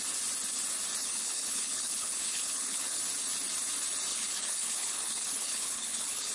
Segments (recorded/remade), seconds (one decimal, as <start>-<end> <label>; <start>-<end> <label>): 0.0-1.0 recorded; 1.0-3.0 remade; 3.0-4.1 recorded; 4.1-6.3 remade